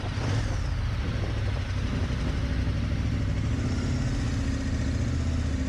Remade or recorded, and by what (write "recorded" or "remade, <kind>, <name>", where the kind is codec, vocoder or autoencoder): recorded